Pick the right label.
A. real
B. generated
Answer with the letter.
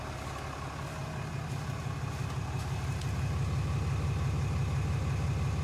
A